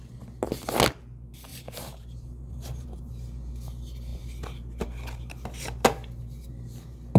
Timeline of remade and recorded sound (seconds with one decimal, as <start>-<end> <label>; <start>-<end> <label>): 0.0-1.5 recorded; 1.5-3.1 remade; 3.1-7.2 recorded